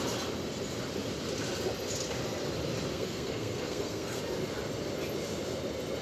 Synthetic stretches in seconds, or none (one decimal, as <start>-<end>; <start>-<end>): 2.9-4.2